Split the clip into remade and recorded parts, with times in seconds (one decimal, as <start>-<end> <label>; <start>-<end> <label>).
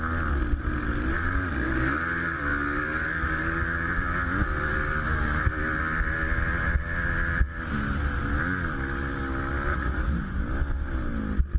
0.0-9.7 recorded; 9.7-10.2 remade; 10.2-11.6 recorded